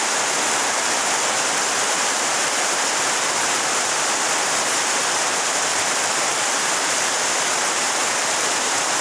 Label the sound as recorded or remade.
recorded